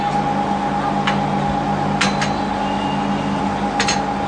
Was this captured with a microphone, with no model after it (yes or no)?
yes